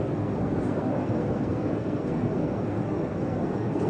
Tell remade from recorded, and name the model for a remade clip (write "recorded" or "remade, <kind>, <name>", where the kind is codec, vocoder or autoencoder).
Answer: remade, codec, SNAC